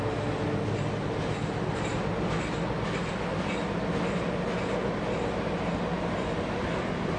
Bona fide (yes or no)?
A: yes